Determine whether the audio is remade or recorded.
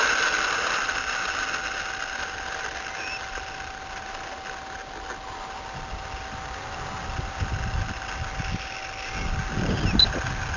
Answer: recorded